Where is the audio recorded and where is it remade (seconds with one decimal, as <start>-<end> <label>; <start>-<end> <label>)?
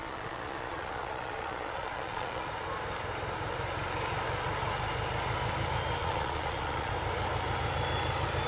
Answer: 0.0-2.5 remade; 2.5-6.0 recorded; 6.0-6.9 remade; 6.9-8.5 recorded